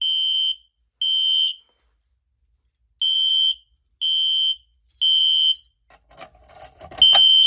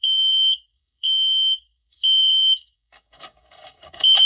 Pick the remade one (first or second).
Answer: second